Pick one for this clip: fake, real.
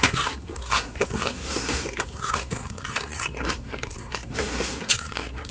fake